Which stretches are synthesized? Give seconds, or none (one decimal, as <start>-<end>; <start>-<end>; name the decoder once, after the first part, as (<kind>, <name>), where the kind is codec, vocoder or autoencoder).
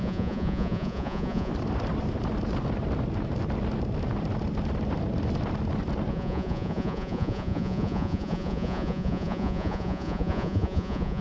0.0-1.5 (vocoder, Vocos); 6.1-11.2